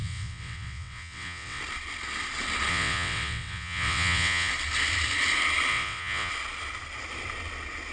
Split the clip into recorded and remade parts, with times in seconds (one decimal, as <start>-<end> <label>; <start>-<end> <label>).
0.0-1.6 remade; 1.6-2.7 recorded; 2.7-4.5 remade; 4.5-5.7 recorded; 5.7-6.3 remade; 6.3-7.9 recorded